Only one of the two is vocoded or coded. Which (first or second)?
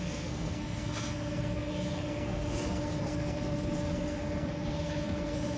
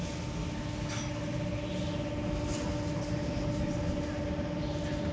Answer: first